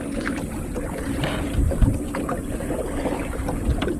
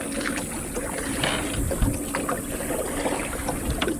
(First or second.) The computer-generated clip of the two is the first